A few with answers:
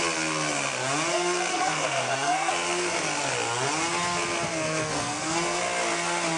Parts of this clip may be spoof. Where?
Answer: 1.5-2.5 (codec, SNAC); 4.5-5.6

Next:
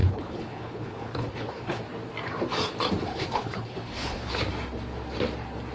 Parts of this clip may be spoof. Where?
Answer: 0.0-1.8 (codec, HILCodec); 3.1-4.3

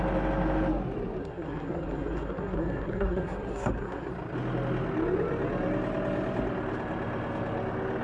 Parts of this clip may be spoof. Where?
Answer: 1.2-4.1 (codec, SNAC)

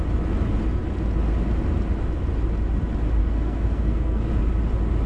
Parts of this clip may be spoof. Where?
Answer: 3.2-4.3 (codec, SNAC)

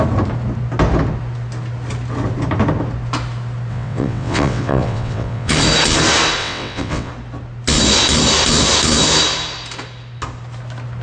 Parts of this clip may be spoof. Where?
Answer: 3.7-5.5 (vocoder, WaveNeXt); 6.4-7.1

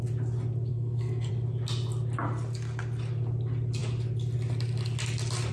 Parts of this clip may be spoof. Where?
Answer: 0.7-1.3 (codec, SNAC)